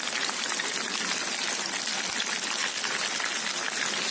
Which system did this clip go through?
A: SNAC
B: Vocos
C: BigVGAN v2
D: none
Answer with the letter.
D